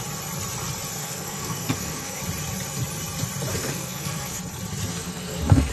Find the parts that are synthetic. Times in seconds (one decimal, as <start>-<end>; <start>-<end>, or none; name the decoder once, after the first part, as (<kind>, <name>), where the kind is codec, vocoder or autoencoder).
1.0-2.2 (codec, SNAC); 3.5-4.4; 4.9-5.7